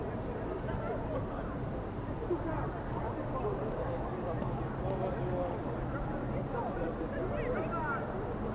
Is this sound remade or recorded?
recorded